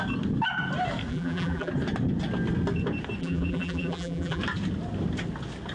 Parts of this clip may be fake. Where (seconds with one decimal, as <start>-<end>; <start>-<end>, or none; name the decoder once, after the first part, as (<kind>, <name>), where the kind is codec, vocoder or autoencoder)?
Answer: 1.1-1.7 (vocoder, BigVGAN v2); 3.2-4.4